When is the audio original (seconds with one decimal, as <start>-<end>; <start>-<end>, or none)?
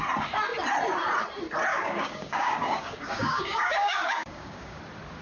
0.0-1.7; 4.8-5.2